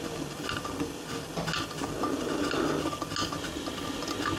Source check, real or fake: real